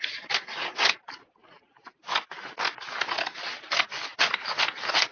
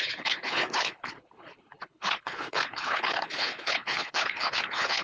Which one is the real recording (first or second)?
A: first